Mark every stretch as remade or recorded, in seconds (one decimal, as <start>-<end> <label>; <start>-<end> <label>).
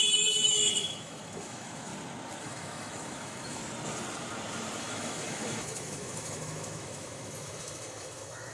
0.0-1.9 remade; 1.9-2.4 recorded; 2.4-3.6 remade; 3.6-4.8 recorded; 4.8-8.5 remade